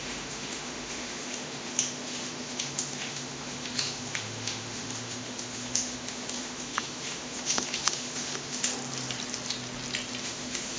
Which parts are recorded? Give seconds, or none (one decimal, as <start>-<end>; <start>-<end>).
8.7-10.2